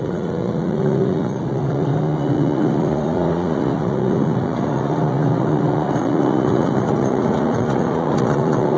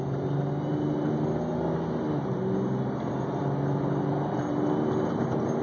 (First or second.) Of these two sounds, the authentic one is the second